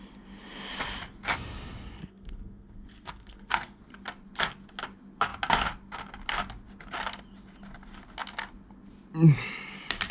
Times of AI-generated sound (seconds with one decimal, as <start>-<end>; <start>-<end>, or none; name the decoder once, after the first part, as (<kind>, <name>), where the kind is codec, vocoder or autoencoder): 2.0-3.8 (codec, SNAC)